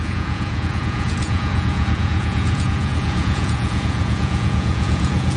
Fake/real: fake